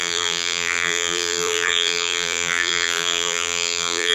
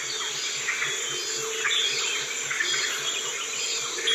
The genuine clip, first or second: second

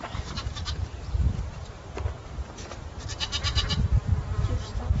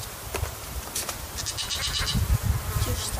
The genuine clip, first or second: second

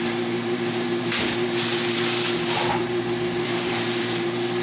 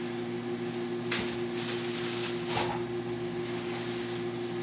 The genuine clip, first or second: second